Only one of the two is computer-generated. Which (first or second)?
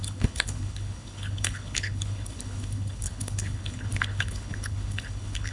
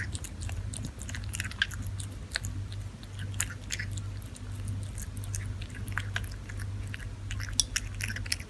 first